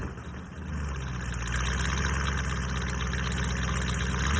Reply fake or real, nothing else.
real